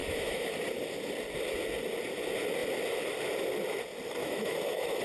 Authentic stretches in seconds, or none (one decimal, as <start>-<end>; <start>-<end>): 0.5-4.2